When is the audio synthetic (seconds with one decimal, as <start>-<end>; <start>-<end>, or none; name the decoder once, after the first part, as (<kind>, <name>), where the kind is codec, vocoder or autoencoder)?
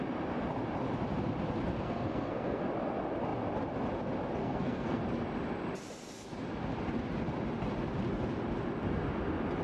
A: 1.7-2.7 (codec, SNAC); 4.4-5.0